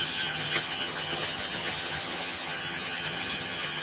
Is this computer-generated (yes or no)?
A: yes